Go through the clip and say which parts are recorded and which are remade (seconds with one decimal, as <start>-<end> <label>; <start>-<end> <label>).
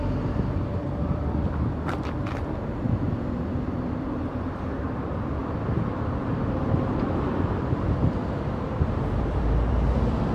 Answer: 0.0-10.3 remade